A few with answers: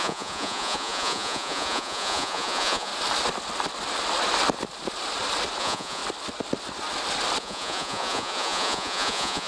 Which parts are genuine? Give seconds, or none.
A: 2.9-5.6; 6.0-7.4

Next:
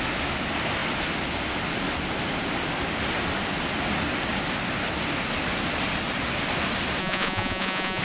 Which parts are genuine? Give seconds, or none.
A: 0.0-7.0